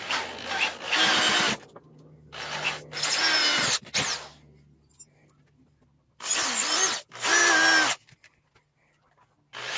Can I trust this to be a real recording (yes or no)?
yes